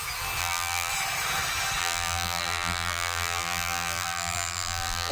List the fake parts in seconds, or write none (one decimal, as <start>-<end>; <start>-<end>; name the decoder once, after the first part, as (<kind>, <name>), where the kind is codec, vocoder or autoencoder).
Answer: 0.4-0.9 (vocoder, BigVGAN v2); 1.8-5.1